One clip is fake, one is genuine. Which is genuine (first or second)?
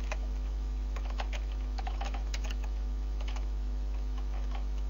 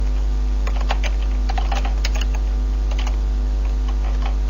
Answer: second